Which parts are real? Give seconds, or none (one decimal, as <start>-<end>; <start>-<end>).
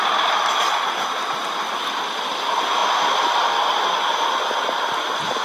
0.0-2.8; 3.4-5.4